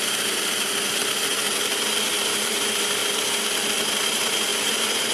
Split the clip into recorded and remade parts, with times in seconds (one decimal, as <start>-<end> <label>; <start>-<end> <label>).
0.0-1.0 remade; 1.0-2.1 recorded; 2.1-3.0 remade; 3.0-3.8 recorded; 3.8-4.5 remade; 4.5-5.1 recorded

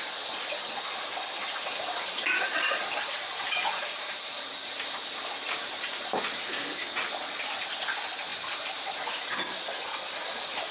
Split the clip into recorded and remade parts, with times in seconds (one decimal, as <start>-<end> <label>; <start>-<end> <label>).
0.0-1.4 recorded; 1.4-6.3 remade; 6.3-8.3 recorded; 8.3-9.0 remade; 9.0-10.7 recorded

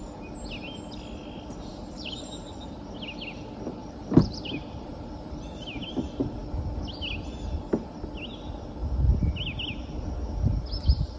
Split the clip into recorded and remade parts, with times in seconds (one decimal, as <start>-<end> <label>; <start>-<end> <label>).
0.0-1.7 recorded; 1.7-3.0 remade; 3.0-3.8 recorded; 3.8-5.8 remade; 5.8-8.8 recorded; 8.8-9.3 remade; 9.3-11.2 recorded

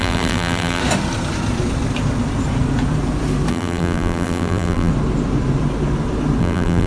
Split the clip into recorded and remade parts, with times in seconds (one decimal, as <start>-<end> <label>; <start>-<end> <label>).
0.0-0.8 remade; 0.8-3.5 recorded; 3.5-4.9 remade; 4.9-6.4 recorded; 6.4-6.9 remade

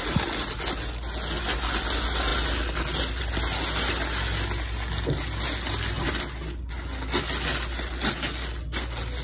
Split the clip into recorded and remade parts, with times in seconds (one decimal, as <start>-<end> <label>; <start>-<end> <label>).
0.0-9.2 recorded

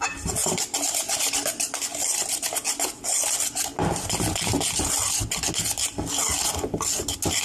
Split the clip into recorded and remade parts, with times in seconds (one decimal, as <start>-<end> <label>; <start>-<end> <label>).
0.0-7.4 recorded

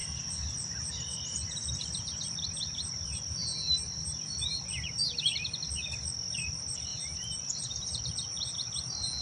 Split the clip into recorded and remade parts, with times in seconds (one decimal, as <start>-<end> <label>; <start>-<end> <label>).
0.0-0.9 remade; 0.9-6.9 recorded; 6.9-8.0 remade; 8.0-9.2 recorded